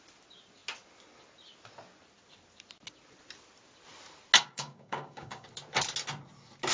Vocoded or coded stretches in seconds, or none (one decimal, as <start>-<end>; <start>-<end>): 4.4-5.5